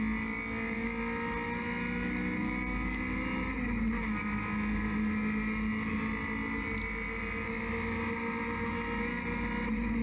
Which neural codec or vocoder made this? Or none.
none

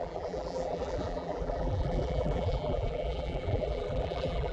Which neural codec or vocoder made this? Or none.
vocoder, BigVGAN v2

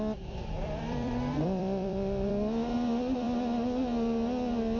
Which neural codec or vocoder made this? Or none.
vocoder, BigVGAN v2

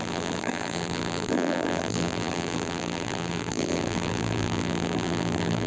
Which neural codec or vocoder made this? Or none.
vocoder, BigVGAN v2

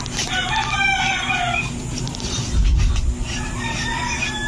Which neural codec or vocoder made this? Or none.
vocoder, BigVGAN v2